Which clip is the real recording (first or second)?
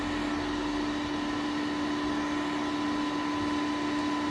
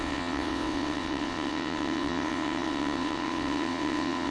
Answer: first